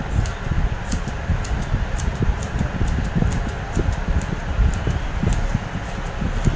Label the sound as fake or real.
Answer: real